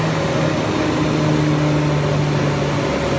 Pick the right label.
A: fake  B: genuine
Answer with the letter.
B